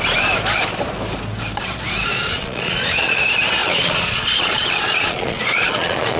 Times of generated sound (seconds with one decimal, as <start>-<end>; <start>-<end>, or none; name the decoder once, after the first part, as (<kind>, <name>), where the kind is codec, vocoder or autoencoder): 2.1-3.2 (vocoder, Vocos); 3.6-6.2